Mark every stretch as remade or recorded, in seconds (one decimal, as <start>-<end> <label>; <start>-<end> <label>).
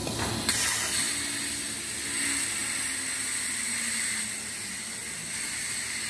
0.0-6.1 recorded